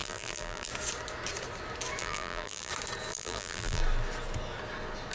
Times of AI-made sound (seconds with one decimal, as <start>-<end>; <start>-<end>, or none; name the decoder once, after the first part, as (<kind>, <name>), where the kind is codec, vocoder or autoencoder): 0.0-0.7 (vocoder, BigVGAN v2); 2.0-2.7; 3.1-3.8